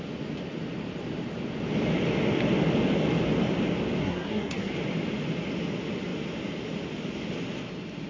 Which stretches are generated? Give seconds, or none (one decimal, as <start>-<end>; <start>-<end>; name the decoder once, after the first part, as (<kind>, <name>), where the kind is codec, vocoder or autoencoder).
4.0-4.7 (codec, SNAC)